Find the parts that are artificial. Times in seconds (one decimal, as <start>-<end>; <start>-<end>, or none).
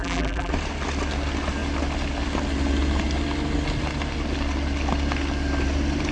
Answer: 0.0-0.5